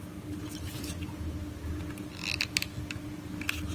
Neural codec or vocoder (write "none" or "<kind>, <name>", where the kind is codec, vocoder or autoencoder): none